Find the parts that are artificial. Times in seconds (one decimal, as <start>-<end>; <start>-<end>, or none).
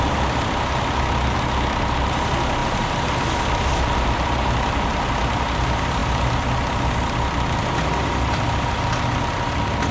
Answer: none